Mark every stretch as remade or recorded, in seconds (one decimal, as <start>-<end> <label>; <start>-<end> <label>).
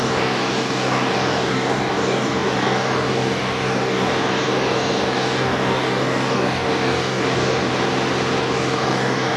0.0-7.7 remade; 7.7-8.4 recorded; 8.4-9.4 remade